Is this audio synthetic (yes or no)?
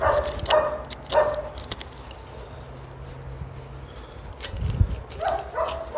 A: no